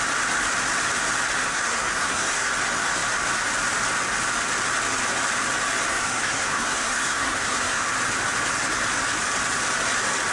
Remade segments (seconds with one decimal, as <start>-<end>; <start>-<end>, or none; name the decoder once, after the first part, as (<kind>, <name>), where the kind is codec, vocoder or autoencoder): 1.5-2.5 (codec, SNAC); 5.9-7.8